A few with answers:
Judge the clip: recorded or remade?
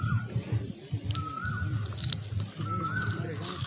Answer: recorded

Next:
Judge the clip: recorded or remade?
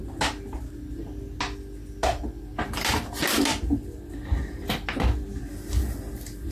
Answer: recorded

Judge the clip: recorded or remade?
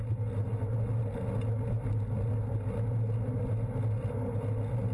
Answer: recorded